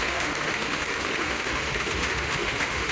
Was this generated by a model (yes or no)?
yes